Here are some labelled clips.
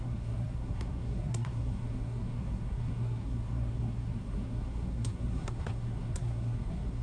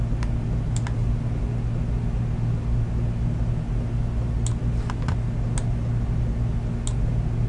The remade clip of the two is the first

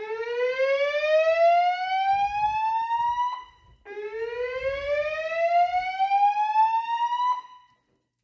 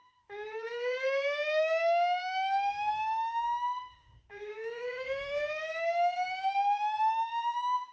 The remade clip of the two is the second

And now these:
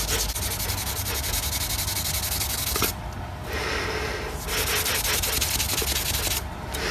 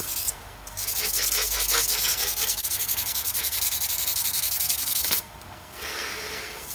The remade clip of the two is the second